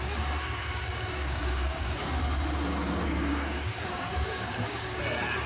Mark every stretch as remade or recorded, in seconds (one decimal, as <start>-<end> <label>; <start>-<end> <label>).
0.0-0.6 recorded; 0.6-2.2 remade; 2.2-2.8 recorded; 2.8-5.0 remade; 5.0-5.5 recorded